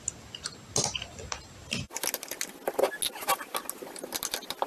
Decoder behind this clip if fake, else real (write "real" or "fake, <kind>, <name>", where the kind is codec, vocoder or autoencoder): real